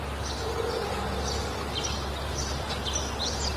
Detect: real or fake real